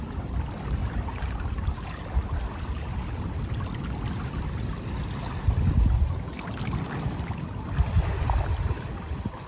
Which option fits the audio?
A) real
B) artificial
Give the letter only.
A